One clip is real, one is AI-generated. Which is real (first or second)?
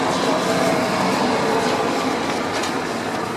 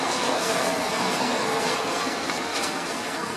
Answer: first